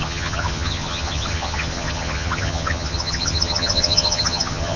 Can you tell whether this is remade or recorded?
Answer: remade